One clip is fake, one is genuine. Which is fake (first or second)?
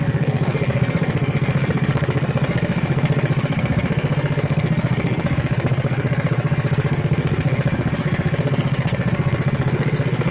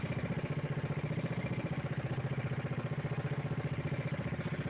first